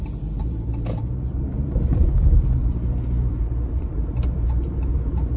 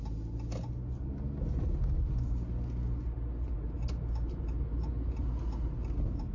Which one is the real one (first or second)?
second